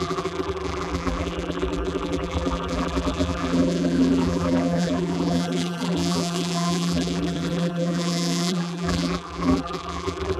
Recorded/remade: remade